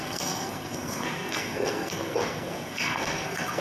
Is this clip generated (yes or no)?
yes